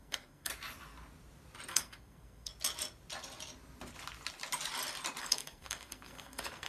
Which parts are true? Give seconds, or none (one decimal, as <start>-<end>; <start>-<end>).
0.5-1.7; 2.5-5.2